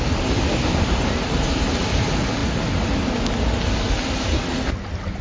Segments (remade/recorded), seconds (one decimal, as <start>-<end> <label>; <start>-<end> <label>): 0.0-5.2 recorded